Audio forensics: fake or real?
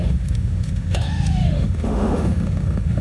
fake